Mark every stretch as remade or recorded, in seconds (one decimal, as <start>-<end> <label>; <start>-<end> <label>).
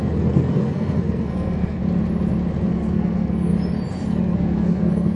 0.0-1.8 remade; 1.8-2.6 recorded; 2.6-3.5 remade; 3.5-4.2 recorded; 4.2-5.2 remade